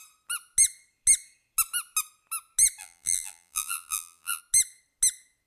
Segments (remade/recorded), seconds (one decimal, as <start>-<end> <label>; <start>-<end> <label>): 0.0-2.8 recorded; 2.8-4.4 remade; 4.4-5.5 recorded